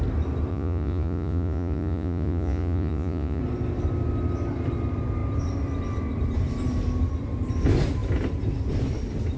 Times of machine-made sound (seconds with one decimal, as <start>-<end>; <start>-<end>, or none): 0.5-3.4